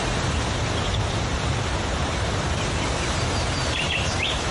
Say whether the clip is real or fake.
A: fake